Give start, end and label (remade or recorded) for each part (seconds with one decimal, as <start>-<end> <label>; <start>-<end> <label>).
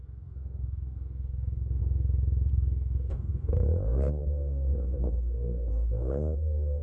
0.0-1.8 remade; 1.8-2.5 recorded; 2.5-6.8 remade